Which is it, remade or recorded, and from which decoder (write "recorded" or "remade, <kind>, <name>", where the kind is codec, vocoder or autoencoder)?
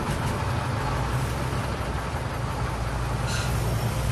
recorded